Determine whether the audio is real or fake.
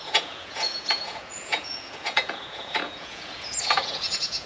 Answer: fake